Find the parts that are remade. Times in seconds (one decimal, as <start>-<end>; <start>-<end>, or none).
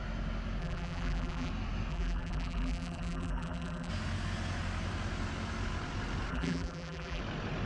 0.6-1.5; 1.9-3.9; 6.3-7.2